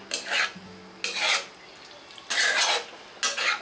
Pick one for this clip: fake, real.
real